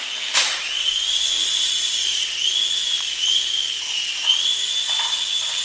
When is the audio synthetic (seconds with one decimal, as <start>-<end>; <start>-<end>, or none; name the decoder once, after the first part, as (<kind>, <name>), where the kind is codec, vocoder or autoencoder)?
0.5-3.9 (vocoder, Vocos)